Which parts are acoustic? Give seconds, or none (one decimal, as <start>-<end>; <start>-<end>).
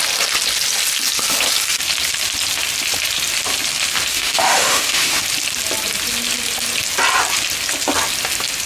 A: 0.0-4.1; 5.2-8.7